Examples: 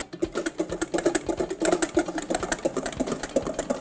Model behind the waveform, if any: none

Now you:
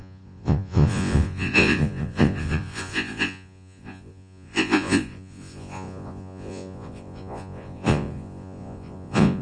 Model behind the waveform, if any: vocoder, Vocos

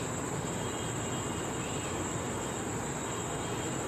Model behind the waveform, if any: none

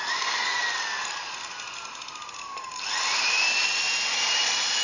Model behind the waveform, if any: none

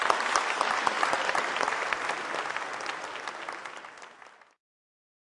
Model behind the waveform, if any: none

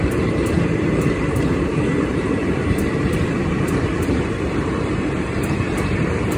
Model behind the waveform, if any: vocoder, BigVGAN v2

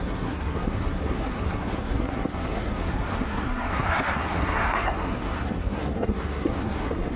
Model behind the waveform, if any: codec, SNAC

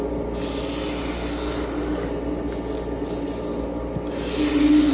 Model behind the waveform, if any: none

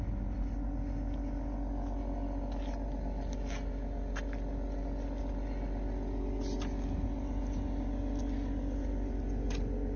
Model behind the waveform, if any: none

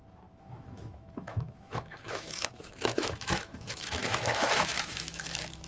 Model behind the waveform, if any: autoencoder, DAC-VAE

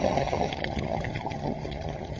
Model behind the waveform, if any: vocoder, HiFi-GAN